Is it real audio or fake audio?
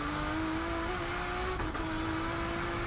real